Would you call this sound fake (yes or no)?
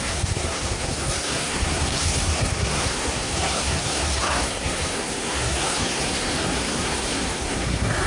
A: yes